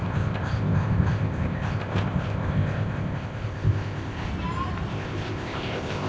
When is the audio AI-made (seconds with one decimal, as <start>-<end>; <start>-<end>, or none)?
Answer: 0.0-4.3; 4.9-6.1